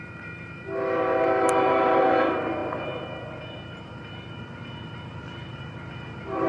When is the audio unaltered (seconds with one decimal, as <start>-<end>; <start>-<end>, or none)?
none